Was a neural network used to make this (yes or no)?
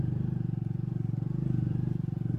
yes